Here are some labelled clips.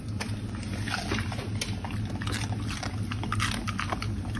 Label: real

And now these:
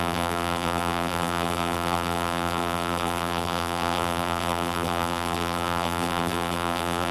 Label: fake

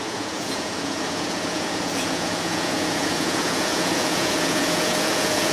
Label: fake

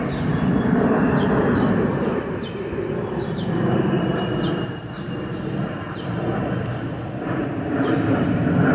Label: fake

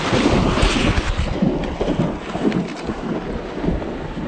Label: real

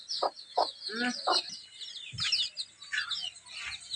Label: real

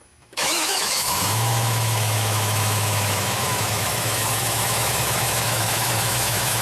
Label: fake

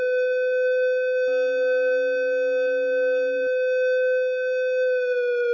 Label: real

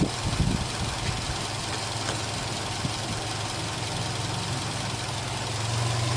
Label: real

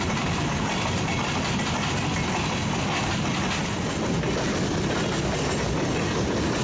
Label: real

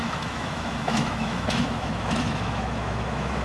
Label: fake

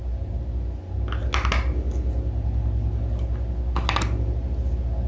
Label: real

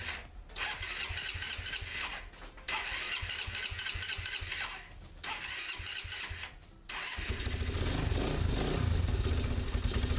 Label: real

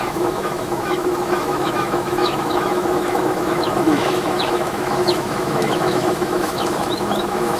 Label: fake